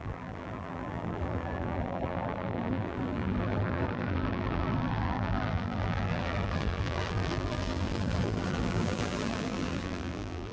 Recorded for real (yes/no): no